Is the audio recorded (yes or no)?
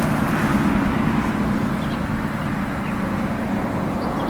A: yes